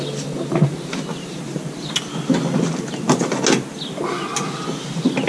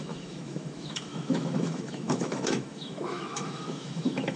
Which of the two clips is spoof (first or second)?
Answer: second